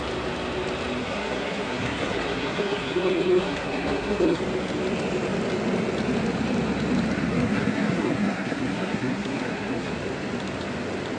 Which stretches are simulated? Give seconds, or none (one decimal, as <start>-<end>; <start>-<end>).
1.0-4.4; 7.3-9.9